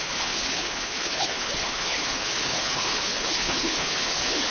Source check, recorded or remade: remade